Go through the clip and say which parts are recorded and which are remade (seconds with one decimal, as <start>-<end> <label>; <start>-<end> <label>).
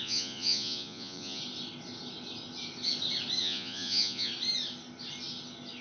0.0-1.4 remade; 1.4-3.4 recorded; 3.4-4.3 remade; 4.3-5.8 recorded